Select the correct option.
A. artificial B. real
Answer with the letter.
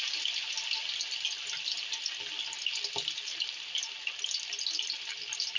B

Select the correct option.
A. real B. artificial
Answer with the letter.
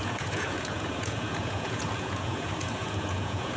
B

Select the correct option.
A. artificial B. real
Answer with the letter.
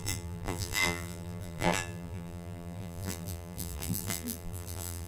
A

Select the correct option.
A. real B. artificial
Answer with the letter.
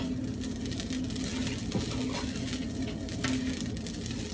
A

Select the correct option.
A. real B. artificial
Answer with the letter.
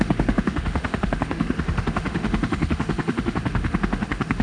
B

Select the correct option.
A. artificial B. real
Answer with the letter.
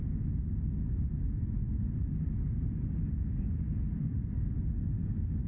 B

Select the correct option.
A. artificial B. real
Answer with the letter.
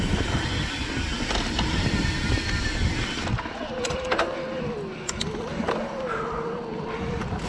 B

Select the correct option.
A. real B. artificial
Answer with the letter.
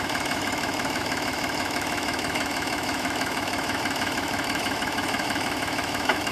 B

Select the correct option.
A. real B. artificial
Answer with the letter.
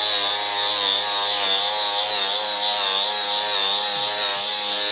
A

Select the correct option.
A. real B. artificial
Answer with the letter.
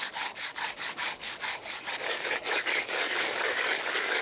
B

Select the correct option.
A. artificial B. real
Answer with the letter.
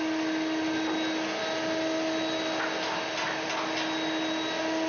B